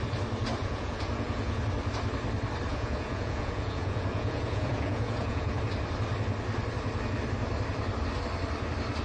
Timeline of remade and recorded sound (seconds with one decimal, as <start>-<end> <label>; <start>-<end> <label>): 0.0-0.6 recorded; 0.6-1.6 remade; 1.6-2.7 recorded; 2.7-5.6 remade; 5.6-9.0 recorded